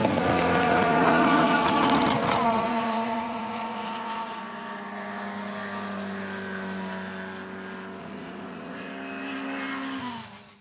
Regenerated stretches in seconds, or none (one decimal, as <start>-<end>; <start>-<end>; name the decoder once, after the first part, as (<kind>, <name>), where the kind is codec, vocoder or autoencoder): 0.0-4.4 (vocoder, Vocos); 8.0-8.9